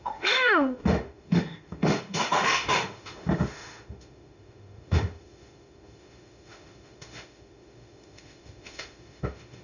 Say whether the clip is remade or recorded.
remade